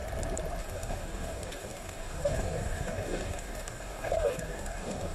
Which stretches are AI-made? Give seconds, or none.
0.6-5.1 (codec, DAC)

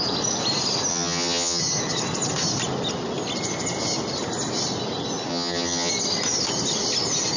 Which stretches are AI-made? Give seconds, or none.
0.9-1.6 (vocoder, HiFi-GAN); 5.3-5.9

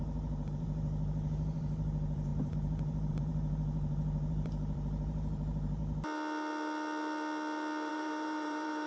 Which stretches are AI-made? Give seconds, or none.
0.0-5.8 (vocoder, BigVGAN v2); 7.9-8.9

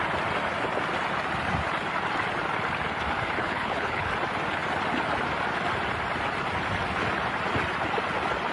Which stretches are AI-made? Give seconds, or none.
3.4-4.1 (codec, HILCodec)

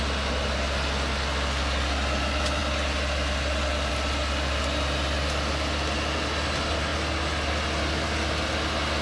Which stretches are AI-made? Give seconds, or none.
none

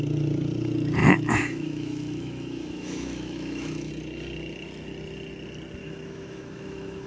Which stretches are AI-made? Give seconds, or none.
1.0-3.9 (autoencoder, DAC-VAE); 5.8-7.1